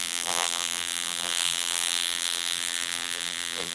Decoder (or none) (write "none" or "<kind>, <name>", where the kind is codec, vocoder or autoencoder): vocoder, BigVGAN v2